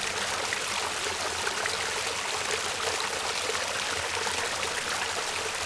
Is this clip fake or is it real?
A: real